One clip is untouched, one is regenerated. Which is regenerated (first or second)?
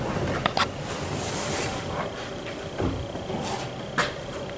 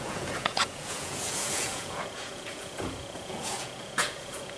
second